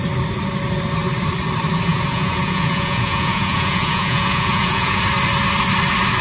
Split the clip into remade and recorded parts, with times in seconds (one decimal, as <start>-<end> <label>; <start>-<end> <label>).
0.0-1.9 recorded; 1.9-5.0 remade; 5.0-6.2 recorded